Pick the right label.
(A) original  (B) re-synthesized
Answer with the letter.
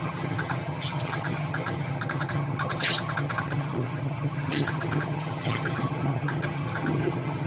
B